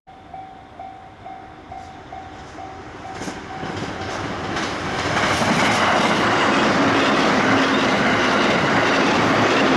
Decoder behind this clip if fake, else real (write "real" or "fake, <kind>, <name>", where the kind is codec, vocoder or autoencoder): real